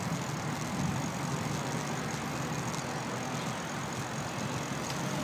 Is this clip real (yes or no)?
yes